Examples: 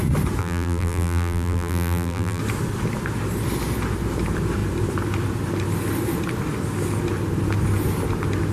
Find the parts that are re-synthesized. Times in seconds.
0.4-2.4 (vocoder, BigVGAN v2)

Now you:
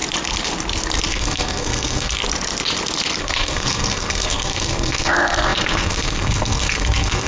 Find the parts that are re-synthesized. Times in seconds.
1.1-2.2 (codec, SNAC); 3.2-7.3

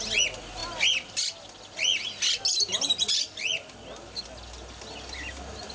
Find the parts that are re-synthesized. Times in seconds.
none

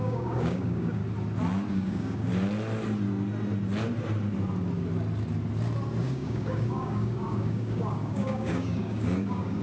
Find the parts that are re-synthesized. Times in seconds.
0.0-1.0 (codec, DAC); 1.7-2.3; 6.0-9.6

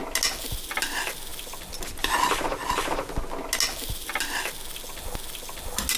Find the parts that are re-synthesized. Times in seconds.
none

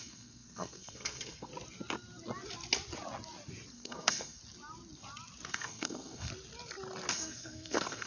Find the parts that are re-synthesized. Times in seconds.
0.0-1.5 (codec, SNAC); 3.7-4.4; 5.5-6.3; 7.1-8.1